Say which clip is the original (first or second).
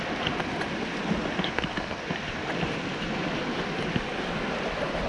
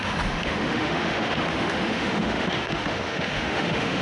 first